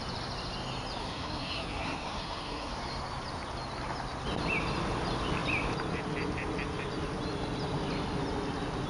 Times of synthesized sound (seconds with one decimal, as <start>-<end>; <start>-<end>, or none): 1.0-2.7